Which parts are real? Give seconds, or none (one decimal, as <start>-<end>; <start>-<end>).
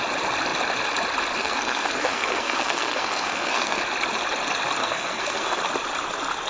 0.0-1.4; 3.8-4.8; 5.6-6.5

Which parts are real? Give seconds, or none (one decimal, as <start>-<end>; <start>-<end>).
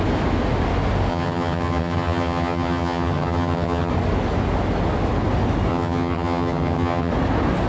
0.0-1.1; 3.9-5.7; 7.1-7.7